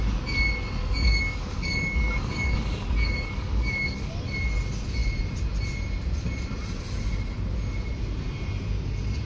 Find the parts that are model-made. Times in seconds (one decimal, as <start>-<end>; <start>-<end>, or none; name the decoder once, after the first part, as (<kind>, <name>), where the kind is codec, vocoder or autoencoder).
0.8-4.1 (codec, DAC)